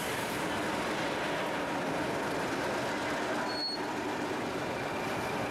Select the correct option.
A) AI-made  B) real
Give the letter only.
B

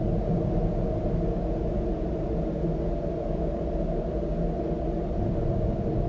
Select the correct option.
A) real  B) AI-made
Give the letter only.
A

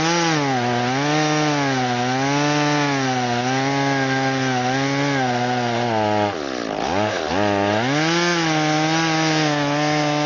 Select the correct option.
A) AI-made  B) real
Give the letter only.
B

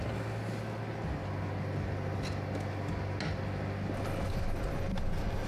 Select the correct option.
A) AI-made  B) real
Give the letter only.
B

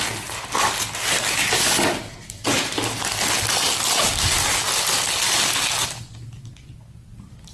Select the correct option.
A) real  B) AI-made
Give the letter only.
A